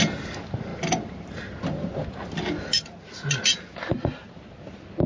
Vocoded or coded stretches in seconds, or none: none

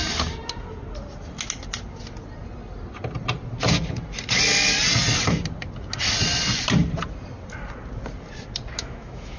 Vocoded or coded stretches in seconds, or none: 8.8-9.4 (autoencoder, DAC-VAE)

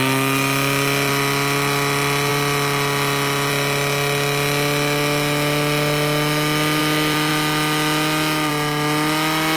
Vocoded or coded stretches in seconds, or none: none

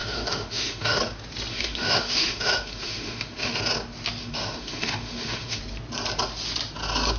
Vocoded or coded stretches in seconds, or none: 0.0-1.0 (autoencoder, DAC-VAE); 1.5-3.6; 4.2-5.6

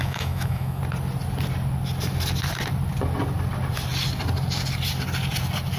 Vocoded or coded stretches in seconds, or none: 0.0-0.8 (autoencoder, DAC-VAE)

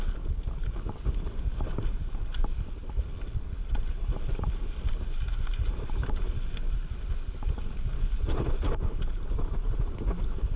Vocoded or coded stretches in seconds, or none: none